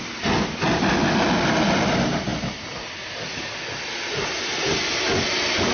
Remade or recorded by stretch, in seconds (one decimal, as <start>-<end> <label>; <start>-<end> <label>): 0.0-5.7 recorded